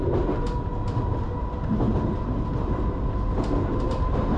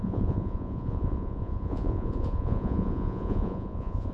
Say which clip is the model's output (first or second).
second